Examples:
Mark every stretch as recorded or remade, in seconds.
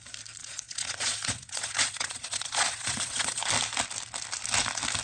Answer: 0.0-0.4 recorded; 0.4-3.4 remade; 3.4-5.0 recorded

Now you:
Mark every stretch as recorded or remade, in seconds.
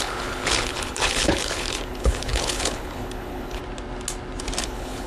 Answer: 0.0-3.6 remade; 3.6-4.6 recorded; 4.6-5.1 remade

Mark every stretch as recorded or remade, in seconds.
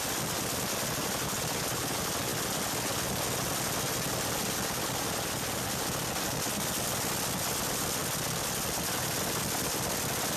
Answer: 0.0-10.4 recorded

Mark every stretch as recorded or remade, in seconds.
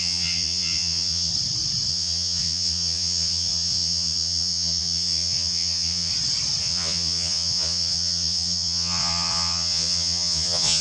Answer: 0.0-1.3 remade; 1.3-1.9 recorded; 1.9-6.1 remade; 6.1-6.6 recorded; 6.6-10.8 remade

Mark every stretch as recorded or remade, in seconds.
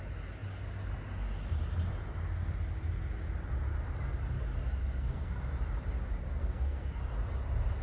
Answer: 0.0-4.8 recorded; 4.8-5.4 remade; 5.4-6.4 recorded; 6.4-7.0 remade; 7.0-7.8 recorded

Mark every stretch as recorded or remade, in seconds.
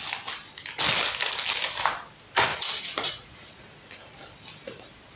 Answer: 0.0-2.5 recorded; 2.5-3.9 remade; 3.9-5.2 recorded